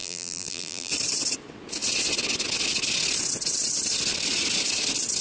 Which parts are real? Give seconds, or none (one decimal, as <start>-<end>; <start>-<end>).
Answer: 0.9-5.2